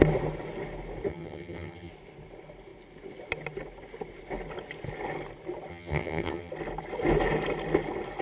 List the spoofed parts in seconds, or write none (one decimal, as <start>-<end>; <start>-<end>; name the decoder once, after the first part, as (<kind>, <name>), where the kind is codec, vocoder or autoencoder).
1.1-1.9 (vocoder, HiFi-GAN); 5.7-6.5